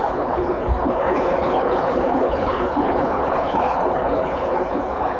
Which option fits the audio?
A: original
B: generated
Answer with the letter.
B